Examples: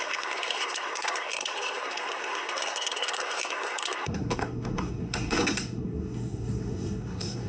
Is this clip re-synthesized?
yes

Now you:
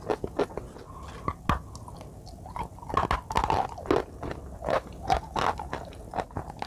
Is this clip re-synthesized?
no